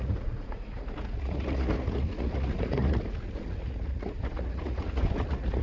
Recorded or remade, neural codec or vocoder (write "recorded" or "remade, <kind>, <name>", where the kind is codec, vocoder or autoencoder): remade, vocoder, Vocos